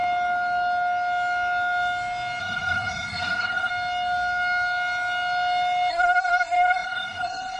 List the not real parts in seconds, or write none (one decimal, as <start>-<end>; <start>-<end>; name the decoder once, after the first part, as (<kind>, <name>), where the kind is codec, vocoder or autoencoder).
2.4-3.7 (codec, SNAC); 5.9-7.6